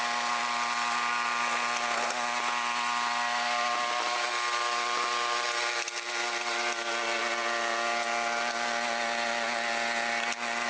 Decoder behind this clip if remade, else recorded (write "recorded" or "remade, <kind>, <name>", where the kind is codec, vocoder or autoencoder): recorded